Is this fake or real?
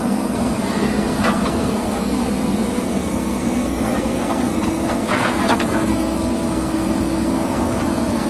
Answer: fake